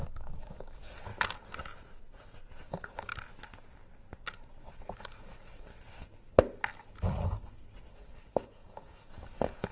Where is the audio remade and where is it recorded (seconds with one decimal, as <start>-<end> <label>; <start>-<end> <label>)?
0.0-1.1 remade; 1.1-2.7 recorded; 2.7-3.1 remade; 3.1-4.7 recorded; 4.7-5.7 remade; 5.7-7.9 recorded; 7.9-9.7 remade